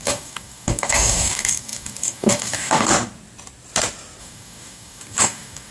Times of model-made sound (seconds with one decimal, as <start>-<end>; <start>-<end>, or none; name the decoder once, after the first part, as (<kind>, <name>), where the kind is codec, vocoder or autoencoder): 0.0-2.9 (codec, DAC); 4.2-5.7